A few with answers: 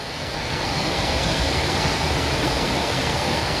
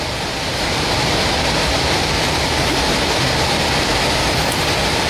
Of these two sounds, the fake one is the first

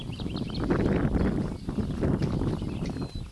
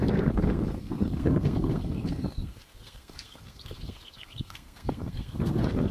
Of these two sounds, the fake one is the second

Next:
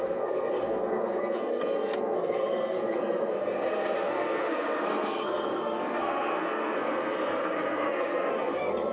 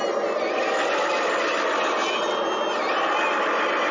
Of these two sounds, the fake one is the first